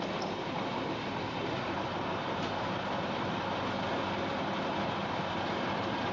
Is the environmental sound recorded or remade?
recorded